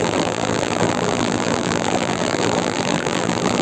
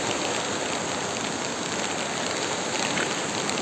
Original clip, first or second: second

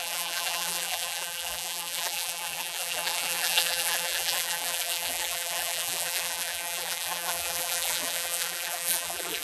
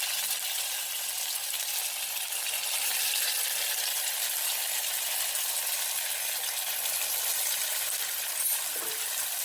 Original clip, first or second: second